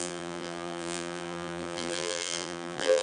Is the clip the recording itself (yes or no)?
no